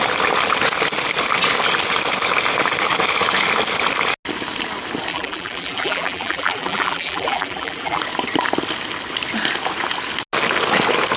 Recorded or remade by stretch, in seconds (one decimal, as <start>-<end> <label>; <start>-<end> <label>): 0.0-5.1 recorded; 5.1-8.0 remade; 8.0-11.2 recorded